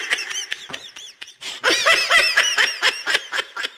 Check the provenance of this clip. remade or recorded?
remade